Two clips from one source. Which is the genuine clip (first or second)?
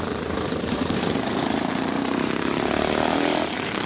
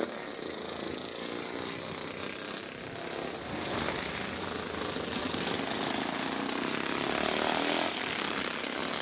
second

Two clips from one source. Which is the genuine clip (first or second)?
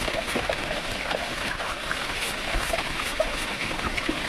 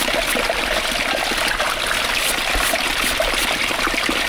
second